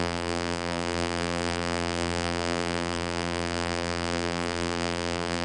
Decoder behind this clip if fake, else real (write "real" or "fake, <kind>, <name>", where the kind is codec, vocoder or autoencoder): fake, vocoder, BigVGAN v2